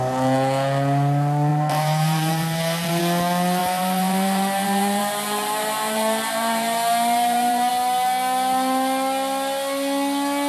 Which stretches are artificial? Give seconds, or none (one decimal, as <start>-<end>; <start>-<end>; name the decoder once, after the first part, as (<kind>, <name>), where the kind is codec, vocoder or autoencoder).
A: 1.5-3.0 (vocoder, BigVGAN v2); 3.6-7.7